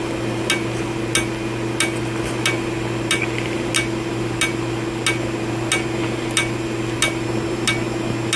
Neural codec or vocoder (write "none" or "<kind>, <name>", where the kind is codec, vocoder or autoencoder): none